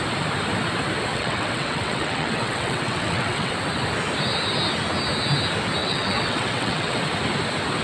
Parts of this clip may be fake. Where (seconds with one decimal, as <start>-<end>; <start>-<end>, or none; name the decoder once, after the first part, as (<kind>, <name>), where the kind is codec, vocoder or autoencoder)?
1.1-3.5 (vocoder, WaveNeXt); 5.8-7.0